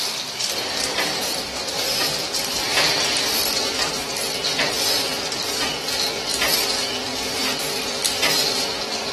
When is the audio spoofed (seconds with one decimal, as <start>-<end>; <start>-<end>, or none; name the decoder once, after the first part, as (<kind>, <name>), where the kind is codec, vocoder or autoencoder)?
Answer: 0.9-2.7 (vocoder, BigVGAN v2)